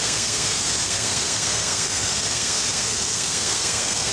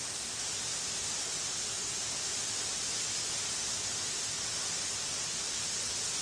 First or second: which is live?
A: second